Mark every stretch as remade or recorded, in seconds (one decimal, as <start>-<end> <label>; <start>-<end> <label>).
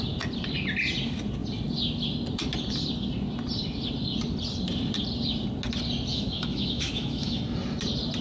0.0-6.1 recorded; 6.1-7.4 remade; 7.4-8.2 recorded